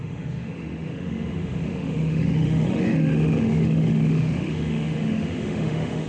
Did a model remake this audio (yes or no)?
yes